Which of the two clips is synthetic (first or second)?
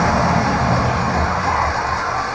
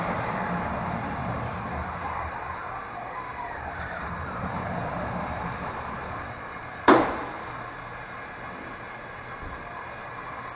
second